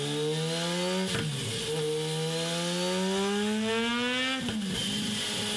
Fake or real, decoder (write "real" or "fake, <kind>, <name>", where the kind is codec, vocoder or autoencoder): real